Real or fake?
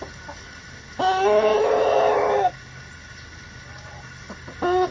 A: real